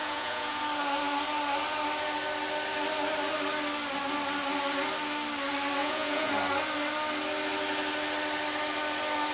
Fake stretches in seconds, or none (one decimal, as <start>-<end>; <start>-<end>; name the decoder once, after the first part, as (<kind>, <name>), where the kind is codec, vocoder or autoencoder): 0.0-0.6 (vocoder, Vocos); 5.8-6.3